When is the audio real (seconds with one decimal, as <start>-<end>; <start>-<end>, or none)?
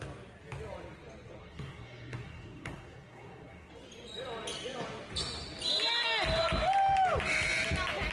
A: 0.0-1.4; 3.7-8.1